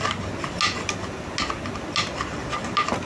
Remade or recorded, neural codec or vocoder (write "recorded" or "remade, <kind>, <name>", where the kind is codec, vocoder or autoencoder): recorded